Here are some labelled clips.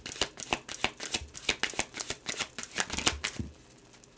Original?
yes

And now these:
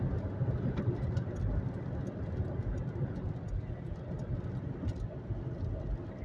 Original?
yes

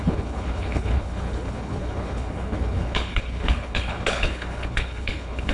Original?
no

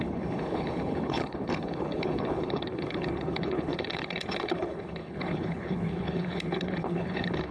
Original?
no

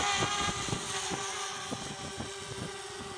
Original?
yes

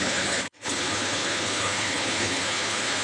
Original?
no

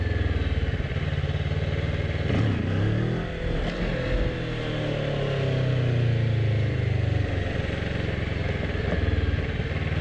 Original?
yes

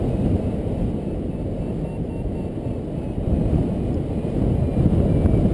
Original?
yes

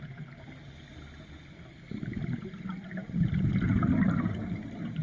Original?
yes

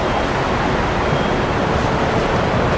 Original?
yes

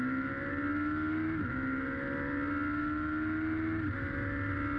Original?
yes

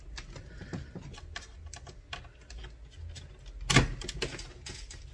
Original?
yes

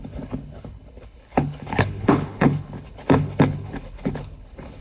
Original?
no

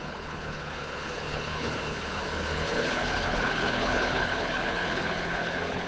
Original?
no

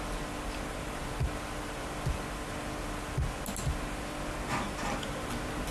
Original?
yes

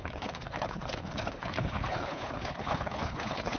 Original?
no